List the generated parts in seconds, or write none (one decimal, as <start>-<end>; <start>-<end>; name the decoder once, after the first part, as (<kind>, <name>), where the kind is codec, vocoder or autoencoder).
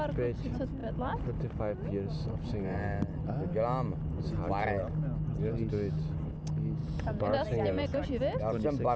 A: 6.8-8.2 (vocoder, Vocos)